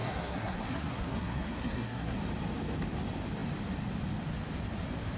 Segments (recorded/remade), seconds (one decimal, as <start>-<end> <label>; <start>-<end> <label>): 0.0-2.2 remade; 2.2-5.2 recorded

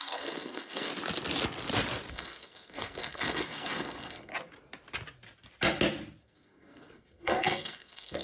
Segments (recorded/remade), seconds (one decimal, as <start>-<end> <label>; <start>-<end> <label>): 0.0-0.9 remade; 0.9-2.1 recorded; 2.1-4.3 remade; 4.3-6.2 recorded; 6.2-8.2 remade

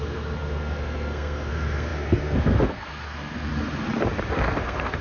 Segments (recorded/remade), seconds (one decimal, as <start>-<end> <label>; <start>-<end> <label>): 0.0-3.5 remade; 3.5-4.3 recorded; 4.3-5.0 remade

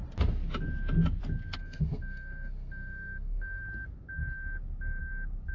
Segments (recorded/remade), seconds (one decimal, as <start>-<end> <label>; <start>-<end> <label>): 0.0-1.6 recorded; 1.6-3.6 remade; 3.6-5.5 recorded

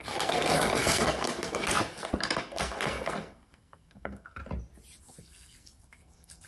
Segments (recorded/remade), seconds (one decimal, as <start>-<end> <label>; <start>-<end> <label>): 0.0-4.4 remade; 4.4-5.0 recorded; 5.0-6.5 remade